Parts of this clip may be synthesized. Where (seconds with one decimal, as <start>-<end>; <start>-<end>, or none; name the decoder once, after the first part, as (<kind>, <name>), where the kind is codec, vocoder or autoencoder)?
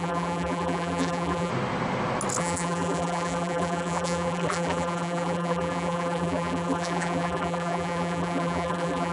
0.0-1.5 (vocoder, BigVGAN v2); 2.4-9.1